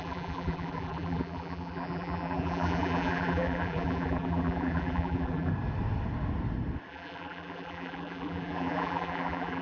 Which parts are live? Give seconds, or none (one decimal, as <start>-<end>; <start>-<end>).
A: 5.5-6.9